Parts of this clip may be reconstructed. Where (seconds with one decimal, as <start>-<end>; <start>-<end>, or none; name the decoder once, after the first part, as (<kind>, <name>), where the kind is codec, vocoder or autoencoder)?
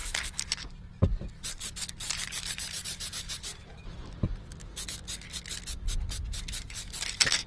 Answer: 0.0-4.3 (vocoder, BigVGAN v2); 6.5-7.5